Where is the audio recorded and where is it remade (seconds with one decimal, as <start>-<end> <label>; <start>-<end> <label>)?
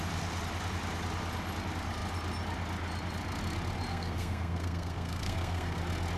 0.0-3.9 recorded; 3.9-5.8 remade; 5.8-6.2 recorded